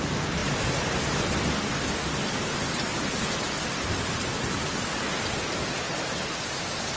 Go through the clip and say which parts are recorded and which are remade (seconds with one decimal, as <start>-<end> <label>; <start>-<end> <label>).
0.0-7.0 recorded